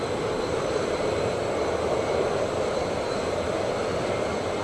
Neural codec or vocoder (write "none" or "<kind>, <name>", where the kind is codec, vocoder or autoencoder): vocoder, BigVGAN v2